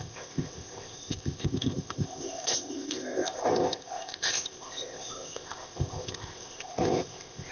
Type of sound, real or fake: fake